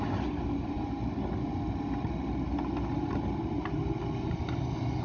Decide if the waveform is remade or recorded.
recorded